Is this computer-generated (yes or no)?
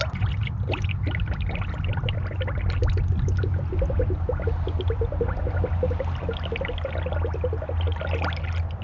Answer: no